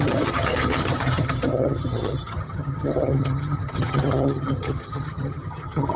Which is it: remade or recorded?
remade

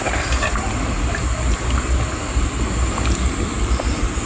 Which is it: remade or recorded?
recorded